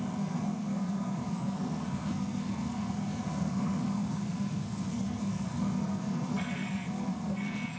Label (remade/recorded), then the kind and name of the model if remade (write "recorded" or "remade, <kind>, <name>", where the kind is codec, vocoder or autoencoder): remade, codec, SNAC